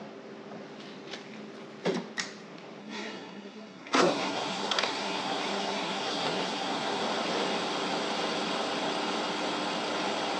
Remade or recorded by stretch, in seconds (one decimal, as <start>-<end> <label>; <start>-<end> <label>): 0.0-2.8 recorded; 2.8-7.0 remade; 7.0-10.4 recorded